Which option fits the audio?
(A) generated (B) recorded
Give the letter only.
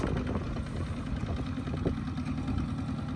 B